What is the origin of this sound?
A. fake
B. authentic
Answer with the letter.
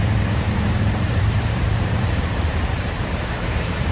A